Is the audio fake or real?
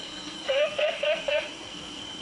fake